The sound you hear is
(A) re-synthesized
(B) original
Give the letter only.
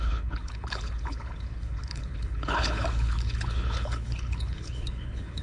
A